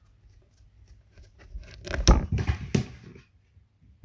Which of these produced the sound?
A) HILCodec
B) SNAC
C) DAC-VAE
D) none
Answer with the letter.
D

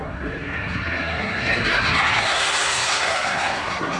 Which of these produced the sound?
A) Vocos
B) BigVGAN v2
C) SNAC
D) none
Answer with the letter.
C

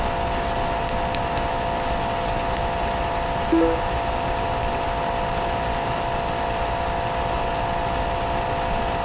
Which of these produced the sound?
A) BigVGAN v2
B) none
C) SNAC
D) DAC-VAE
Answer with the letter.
B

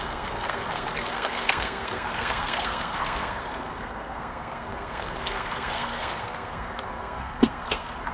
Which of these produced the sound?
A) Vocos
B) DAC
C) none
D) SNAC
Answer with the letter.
D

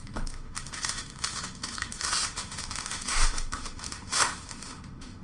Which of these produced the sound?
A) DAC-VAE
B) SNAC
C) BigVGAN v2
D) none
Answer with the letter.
A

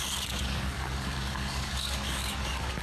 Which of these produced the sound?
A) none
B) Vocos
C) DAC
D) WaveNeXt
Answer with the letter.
C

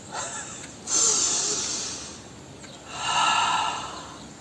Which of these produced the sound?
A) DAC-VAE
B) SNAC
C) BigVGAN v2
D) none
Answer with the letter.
D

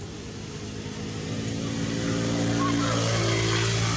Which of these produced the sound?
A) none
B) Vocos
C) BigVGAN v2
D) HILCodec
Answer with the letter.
A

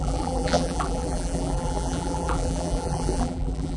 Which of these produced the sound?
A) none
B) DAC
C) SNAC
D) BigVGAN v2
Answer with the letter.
D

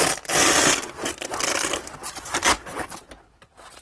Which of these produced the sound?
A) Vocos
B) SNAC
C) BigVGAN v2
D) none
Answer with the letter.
D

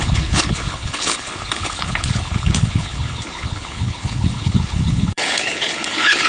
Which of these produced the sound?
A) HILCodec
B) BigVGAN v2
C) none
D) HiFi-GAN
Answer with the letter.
A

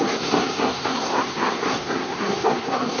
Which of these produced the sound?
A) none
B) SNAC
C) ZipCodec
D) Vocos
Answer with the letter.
B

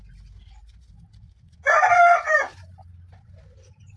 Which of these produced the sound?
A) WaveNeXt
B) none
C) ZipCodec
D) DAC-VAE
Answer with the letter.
B